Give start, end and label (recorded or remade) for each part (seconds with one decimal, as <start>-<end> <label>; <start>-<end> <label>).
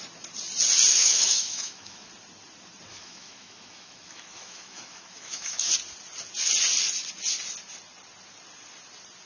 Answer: 0.0-0.9 recorded; 0.9-2.1 remade; 2.1-2.9 recorded; 2.9-5.7 remade; 5.7-9.3 recorded